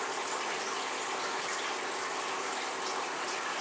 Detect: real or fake real